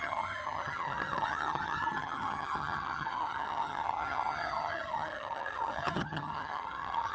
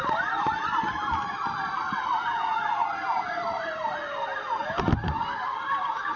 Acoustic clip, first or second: second